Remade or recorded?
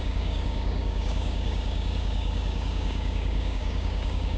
remade